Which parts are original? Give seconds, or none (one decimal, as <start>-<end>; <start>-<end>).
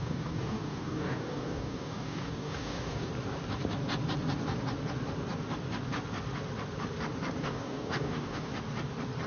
3.1-7.4; 8.5-9.3